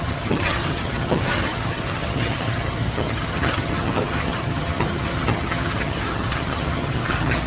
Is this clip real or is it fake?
fake